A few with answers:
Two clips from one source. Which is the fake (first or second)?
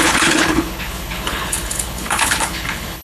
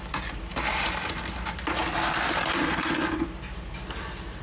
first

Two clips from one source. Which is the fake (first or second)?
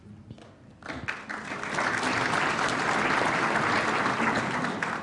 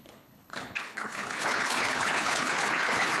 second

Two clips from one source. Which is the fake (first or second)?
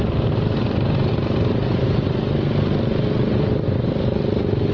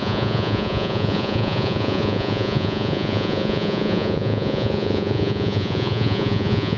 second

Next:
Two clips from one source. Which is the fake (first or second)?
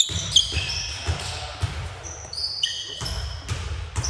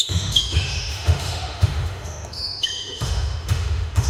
second